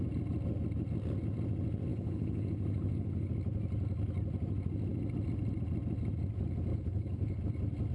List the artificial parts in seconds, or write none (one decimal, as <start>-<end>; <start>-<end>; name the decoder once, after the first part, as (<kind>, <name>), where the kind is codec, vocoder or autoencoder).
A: 1.9-3.3 (codec, HILCodec); 6.7-7.4